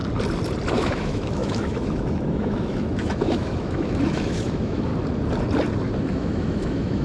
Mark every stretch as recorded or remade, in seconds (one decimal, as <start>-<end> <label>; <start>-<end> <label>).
0.0-0.7 recorded; 0.7-4.9 remade; 4.9-6.1 recorded; 6.1-7.0 remade